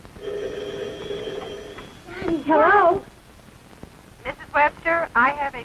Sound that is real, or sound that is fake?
real